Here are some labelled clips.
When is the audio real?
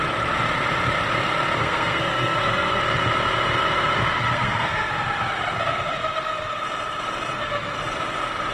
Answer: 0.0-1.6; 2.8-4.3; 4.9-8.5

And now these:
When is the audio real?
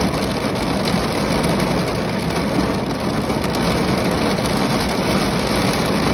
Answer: 0.0-6.1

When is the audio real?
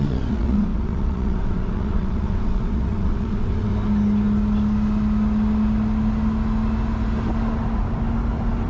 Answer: 3.7-8.7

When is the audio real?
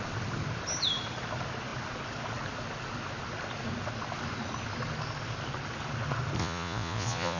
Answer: 0.0-6.4